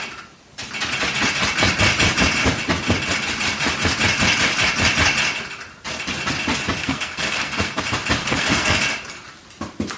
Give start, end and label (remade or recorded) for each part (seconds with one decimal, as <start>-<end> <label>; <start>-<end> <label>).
0.0-6.8 recorded; 6.8-7.8 remade; 7.8-8.2 recorded; 8.2-8.8 remade; 8.8-10.0 recorded